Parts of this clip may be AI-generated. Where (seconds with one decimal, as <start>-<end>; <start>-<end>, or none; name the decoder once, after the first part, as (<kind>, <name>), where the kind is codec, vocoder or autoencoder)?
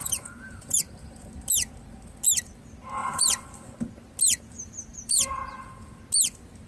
0.0-0.8 (vocoder, Vocos); 4.9-5.9